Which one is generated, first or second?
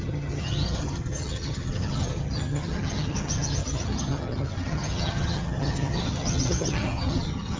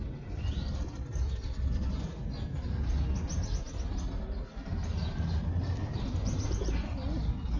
first